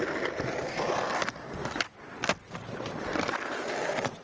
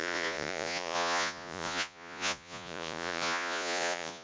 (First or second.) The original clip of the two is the first